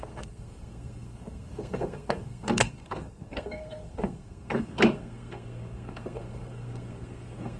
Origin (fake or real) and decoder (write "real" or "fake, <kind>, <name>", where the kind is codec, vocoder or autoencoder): fake, codec, SNAC